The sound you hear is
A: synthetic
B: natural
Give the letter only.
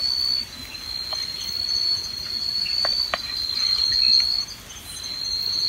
B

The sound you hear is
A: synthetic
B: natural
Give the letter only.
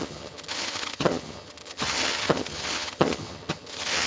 A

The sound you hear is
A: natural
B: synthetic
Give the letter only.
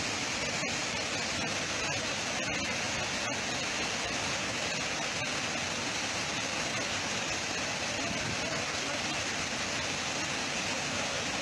A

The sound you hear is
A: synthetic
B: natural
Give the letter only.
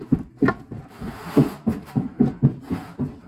B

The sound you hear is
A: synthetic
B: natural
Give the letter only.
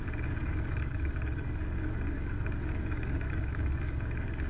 A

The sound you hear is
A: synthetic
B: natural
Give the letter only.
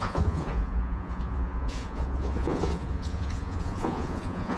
A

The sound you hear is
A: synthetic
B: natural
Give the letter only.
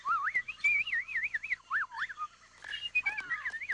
A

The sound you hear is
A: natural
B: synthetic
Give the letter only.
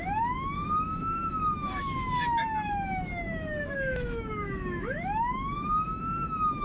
B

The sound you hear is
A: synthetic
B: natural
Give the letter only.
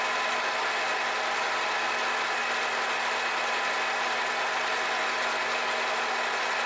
B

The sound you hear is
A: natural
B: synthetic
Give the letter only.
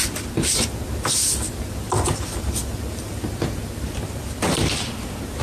A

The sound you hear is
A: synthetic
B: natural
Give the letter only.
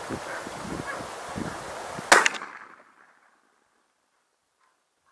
B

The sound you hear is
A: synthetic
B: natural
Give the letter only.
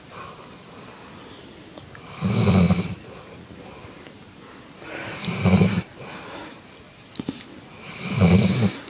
B